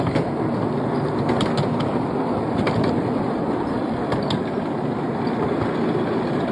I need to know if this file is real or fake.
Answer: real